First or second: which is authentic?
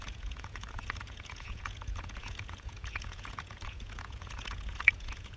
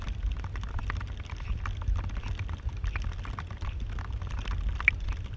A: second